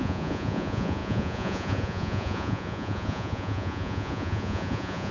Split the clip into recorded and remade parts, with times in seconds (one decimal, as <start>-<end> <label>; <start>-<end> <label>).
0.0-5.1 remade